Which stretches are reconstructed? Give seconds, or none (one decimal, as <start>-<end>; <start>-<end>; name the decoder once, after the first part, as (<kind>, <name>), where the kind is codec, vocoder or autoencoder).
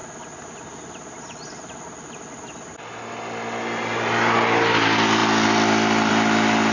none